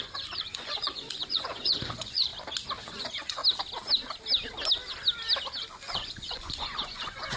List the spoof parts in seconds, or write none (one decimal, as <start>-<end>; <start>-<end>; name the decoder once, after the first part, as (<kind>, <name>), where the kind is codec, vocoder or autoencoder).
0.0-2.3 (vocoder, Vocos); 2.8-3.4; 5.7-7.4